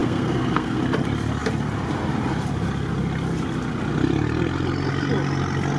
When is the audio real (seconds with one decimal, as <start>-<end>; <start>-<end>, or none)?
0.8-5.8

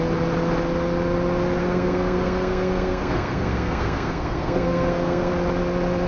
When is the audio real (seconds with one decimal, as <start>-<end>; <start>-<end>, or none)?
0.0-1.6; 5.3-6.1

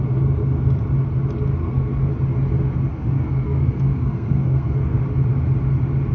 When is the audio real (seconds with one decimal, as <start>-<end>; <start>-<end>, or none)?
0.0-1.6; 2.1-2.9; 5.0-6.1

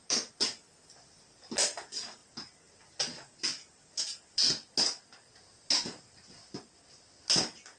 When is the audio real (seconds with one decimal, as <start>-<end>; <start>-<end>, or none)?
0.0-7.8

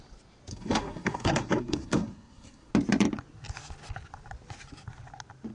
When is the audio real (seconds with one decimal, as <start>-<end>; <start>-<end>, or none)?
0.0-0.5; 2.7-5.5

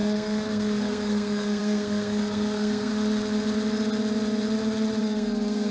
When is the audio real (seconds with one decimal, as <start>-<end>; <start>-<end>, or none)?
2.9-5.0

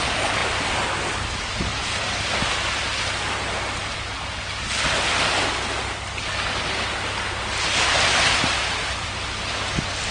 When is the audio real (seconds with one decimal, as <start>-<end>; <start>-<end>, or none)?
0.0-10.1